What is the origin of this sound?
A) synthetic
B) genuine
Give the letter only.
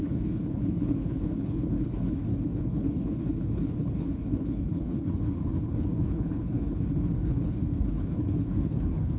A